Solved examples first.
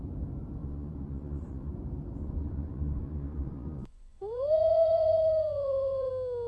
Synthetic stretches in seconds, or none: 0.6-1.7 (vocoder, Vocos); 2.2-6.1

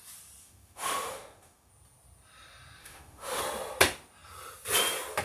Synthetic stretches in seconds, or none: 0.4-1.7 (autoencoder, DAC-VAE); 2.8-3.4

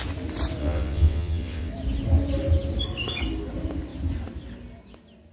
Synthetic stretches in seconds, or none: 0.6-1.7 (vocoder, WaveNeXt)

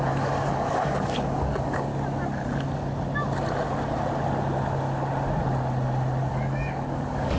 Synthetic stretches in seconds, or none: 0.0-1.9 (codec, DAC); 6.3-7.4

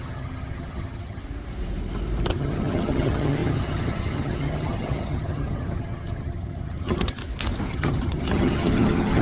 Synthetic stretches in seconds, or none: 0.0-1.2 (vocoder, HiFi-GAN); 2.3-7.2; 7.7-9.2

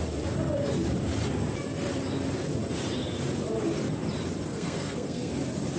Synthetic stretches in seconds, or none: 4.5-5.3 (codec, SNAC)

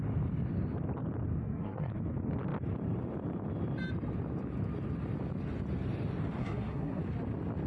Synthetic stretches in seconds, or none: 1.4-1.9 (codec, SNAC); 6.4-7.0